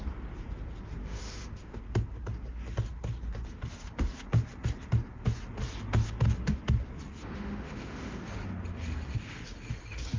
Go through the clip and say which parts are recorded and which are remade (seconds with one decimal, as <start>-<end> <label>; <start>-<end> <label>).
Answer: 0.0-1.0 recorded; 1.0-1.8 remade; 1.8-7.2 recorded; 7.2-8.2 remade; 8.2-10.2 recorded